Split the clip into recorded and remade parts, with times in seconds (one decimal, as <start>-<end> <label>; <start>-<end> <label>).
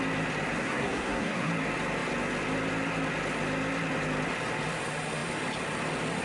0.0-0.6 recorded; 0.6-1.5 remade; 1.5-6.2 recorded